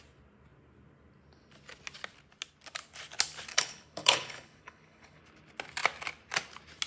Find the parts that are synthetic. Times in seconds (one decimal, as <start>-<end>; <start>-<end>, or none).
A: 3.5-5.2